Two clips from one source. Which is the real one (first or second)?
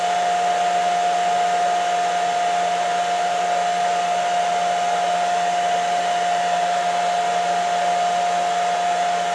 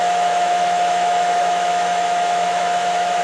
first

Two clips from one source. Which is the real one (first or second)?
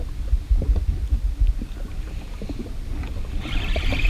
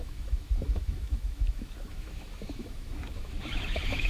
first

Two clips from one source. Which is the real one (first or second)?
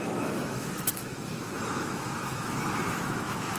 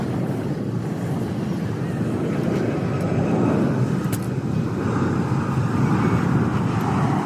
second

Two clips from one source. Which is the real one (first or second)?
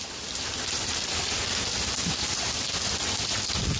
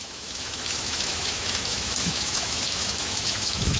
first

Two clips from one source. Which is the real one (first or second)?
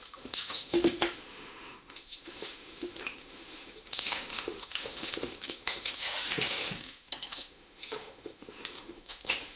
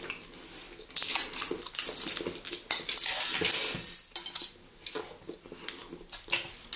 second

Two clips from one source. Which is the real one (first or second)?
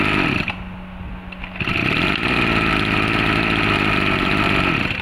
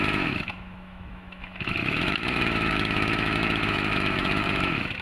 first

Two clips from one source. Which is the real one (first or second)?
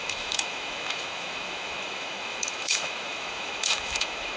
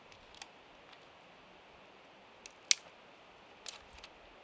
second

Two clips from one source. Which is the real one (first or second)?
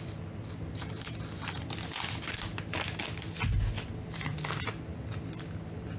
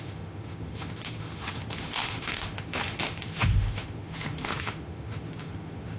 first